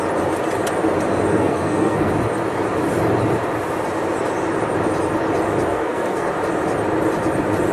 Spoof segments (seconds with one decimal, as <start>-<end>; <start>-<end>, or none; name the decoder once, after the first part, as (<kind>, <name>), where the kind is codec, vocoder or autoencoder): 1.3-2.1 (codec, SNAC); 5.7-6.3